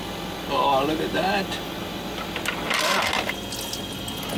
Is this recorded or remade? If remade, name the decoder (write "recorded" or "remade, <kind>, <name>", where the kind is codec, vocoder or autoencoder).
recorded